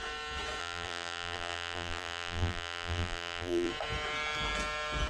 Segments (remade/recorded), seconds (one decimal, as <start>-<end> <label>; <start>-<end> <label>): 0.0-0.6 recorded; 0.6-3.7 remade; 3.7-5.1 recorded